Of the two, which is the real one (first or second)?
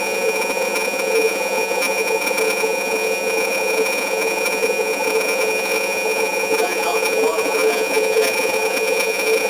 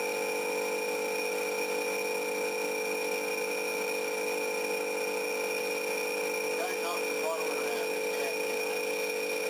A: second